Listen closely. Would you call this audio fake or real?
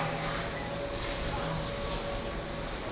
real